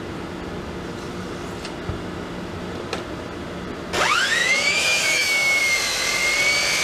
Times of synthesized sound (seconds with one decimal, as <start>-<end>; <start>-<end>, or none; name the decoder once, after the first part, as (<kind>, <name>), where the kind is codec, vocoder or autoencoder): 4.4-5.6 (autoencoder, DAC-VAE)